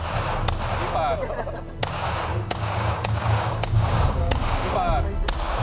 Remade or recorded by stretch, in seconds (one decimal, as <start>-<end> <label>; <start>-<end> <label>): 0.0-2.3 recorded; 2.3-4.7 remade; 4.7-5.6 recorded